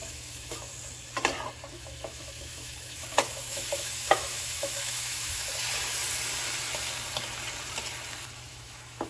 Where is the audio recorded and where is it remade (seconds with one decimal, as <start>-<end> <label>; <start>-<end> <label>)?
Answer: 0.0-0.7 remade; 0.7-1.7 recorded; 1.7-5.5 remade; 5.5-8.5 recorded; 8.5-9.1 remade